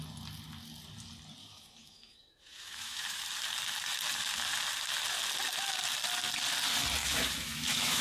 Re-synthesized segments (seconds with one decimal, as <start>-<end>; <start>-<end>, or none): 1.4-3.2; 7.0-8.0